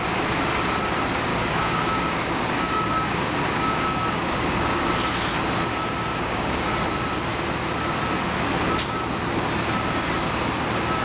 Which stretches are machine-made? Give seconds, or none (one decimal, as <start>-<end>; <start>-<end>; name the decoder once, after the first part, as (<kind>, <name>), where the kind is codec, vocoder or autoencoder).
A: 1.3-4.9 (codec, DAC); 6.1-6.7